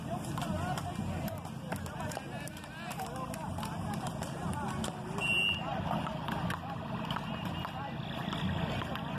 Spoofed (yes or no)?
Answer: no